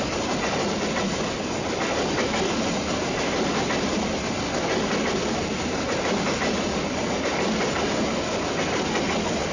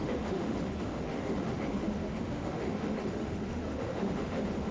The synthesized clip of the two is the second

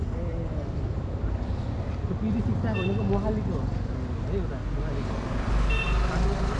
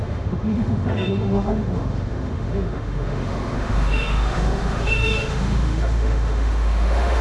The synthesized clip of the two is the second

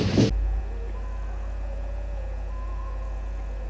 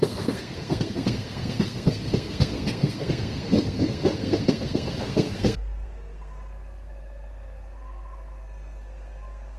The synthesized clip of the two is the second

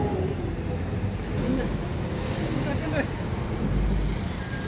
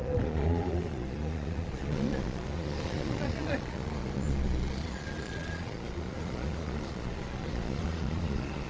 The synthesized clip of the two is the second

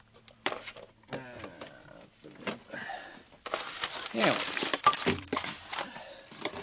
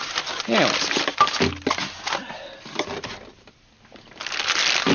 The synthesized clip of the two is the first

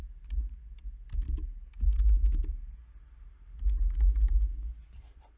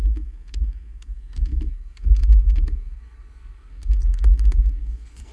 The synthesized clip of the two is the second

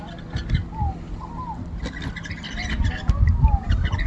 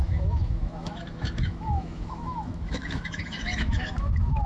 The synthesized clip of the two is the second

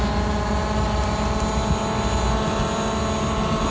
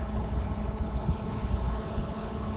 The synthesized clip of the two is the second